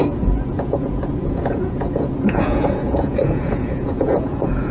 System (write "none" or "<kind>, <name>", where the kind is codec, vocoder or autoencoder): vocoder, Vocos